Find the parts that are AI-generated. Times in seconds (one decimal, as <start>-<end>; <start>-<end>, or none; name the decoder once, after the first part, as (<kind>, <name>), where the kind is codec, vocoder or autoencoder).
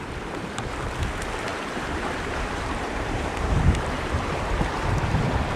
1.5-4.4 (vocoder, BigVGAN v2)